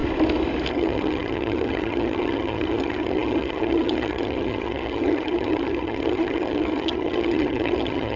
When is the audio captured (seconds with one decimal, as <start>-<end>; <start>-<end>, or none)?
0.0-0.7